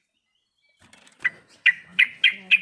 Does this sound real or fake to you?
real